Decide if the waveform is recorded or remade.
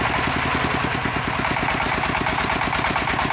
recorded